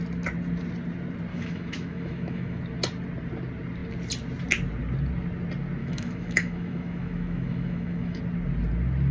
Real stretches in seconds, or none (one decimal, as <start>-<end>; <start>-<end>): 0.0-1.3; 2.6-5.8; 8.2-9.1